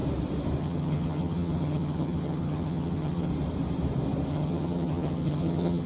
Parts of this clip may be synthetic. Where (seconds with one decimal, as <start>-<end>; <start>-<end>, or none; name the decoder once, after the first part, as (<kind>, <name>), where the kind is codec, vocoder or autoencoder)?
0.6-3.3 (vocoder, HiFi-GAN); 4.3-5.9